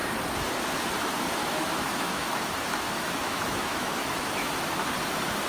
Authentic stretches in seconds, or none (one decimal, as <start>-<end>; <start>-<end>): 0.0-1.4; 4.7-5.5